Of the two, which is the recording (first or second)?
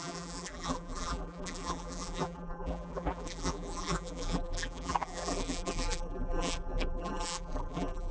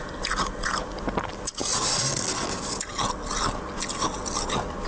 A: second